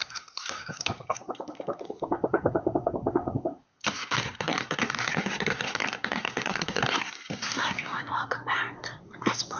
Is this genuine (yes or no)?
no